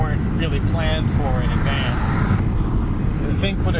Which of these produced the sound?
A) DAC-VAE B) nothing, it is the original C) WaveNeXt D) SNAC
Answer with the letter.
B